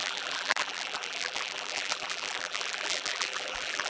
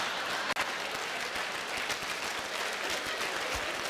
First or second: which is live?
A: second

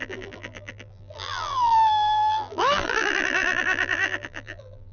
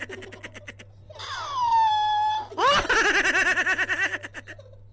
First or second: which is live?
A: second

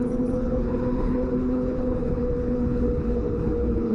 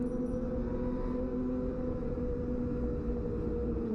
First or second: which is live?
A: second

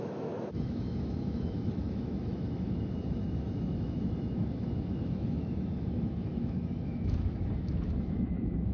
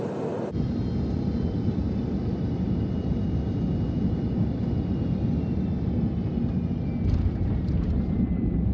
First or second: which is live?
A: second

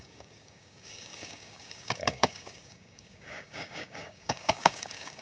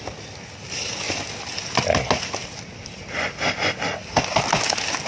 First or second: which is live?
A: second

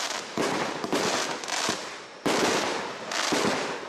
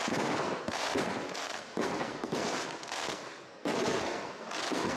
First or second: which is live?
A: first